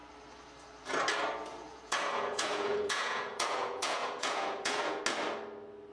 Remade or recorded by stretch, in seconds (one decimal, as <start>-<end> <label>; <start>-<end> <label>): 0.0-1.5 recorded; 1.5-5.0 remade; 5.0-5.9 recorded